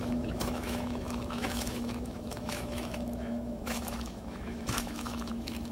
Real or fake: fake